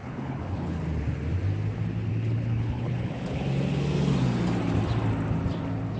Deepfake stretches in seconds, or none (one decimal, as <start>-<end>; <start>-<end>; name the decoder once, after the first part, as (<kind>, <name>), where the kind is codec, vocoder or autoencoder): 0.0-0.8 (codec, HILCodec); 2.1-3.4